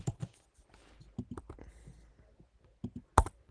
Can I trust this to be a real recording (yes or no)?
yes